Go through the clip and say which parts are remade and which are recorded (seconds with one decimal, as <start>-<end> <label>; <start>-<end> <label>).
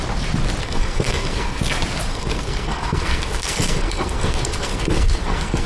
0.0-0.6 recorded; 0.6-1.6 remade; 1.6-2.1 recorded; 2.1-5.7 remade